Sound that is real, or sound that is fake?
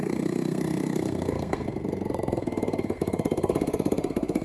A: fake